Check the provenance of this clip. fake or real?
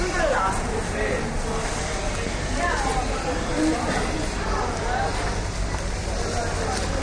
real